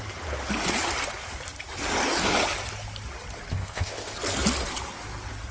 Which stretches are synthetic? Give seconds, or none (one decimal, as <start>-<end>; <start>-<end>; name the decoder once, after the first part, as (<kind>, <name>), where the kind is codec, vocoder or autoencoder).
3.5-4.2 (codec, ZipCodec)